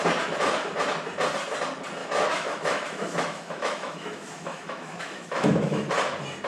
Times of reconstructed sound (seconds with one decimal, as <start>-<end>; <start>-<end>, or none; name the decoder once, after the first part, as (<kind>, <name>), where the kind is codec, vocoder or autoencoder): 2.0-5.9 (autoencoder, DAC-VAE)